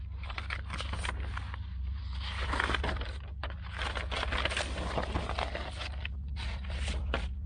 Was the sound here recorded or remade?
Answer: recorded